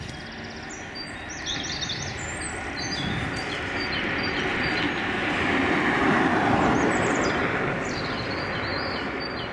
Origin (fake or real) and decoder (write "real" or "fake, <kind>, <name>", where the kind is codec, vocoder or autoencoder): real